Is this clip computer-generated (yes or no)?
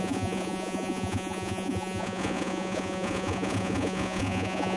yes